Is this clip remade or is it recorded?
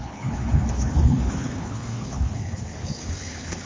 remade